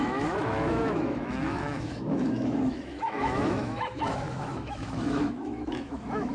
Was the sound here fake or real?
fake